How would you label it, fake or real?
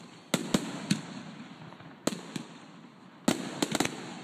real